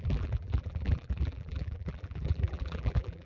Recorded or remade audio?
remade